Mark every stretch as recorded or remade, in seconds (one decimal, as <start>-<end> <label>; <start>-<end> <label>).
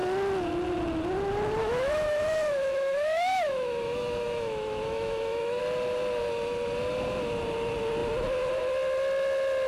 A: 0.0-1.6 recorded; 1.6-5.6 remade; 5.6-9.7 recorded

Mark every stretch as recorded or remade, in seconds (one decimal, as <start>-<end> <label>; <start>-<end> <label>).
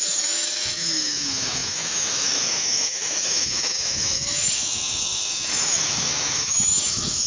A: 0.0-7.3 remade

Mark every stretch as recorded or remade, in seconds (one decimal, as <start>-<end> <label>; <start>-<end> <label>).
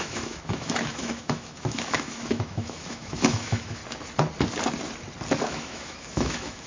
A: 0.0-3.8 remade; 3.8-5.4 recorded; 5.4-6.7 remade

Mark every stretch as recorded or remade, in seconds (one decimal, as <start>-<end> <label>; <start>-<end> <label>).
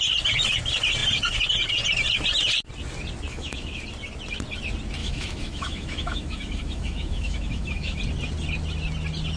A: 0.0-3.3 recorded; 3.3-3.8 remade; 3.8-5.0 recorded; 5.0-8.0 remade; 8.0-9.4 recorded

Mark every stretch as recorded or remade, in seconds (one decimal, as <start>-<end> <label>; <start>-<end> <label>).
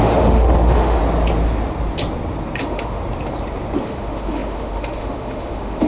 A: 0.0-1.0 remade; 1.0-2.6 recorded; 2.6-3.0 remade; 3.0-3.8 recorded; 3.8-5.9 remade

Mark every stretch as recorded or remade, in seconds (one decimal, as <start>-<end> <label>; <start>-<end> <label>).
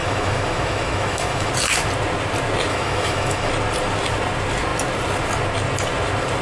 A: 0.0-1.5 remade; 1.5-2.7 recorded; 2.7-3.5 remade; 3.5-6.4 recorded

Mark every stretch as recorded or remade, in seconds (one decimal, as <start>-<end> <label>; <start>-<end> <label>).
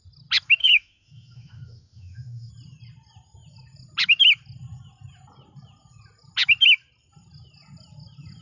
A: 0.0-0.6 recorded; 0.6-2.5 remade; 2.5-8.4 recorded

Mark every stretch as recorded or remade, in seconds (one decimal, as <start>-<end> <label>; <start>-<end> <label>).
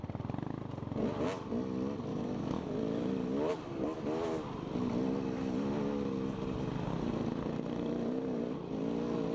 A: 0.0-2.1 recorded; 2.1-2.7 remade; 2.7-9.3 recorded